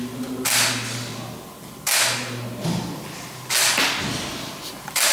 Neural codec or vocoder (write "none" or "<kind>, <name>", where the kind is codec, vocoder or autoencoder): none